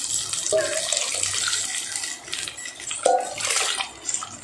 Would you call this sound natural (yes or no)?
yes